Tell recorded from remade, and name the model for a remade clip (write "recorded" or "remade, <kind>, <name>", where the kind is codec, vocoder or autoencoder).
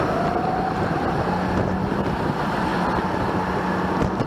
recorded